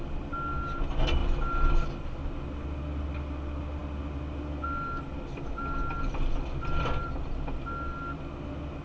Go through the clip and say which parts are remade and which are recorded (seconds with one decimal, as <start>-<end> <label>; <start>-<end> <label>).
0.0-8.8 recorded